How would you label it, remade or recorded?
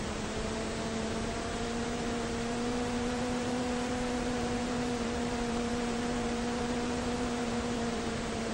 remade